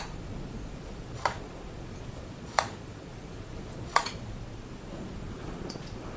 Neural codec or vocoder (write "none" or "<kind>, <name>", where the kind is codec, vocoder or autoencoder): vocoder, Vocos